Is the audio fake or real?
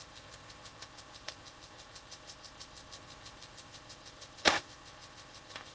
fake